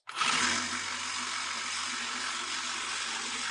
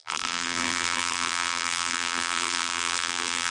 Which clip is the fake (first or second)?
second